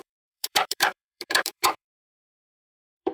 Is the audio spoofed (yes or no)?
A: yes